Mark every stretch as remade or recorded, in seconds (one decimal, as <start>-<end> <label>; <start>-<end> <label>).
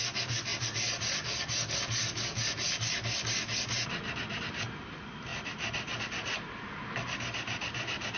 0.0-8.2 recorded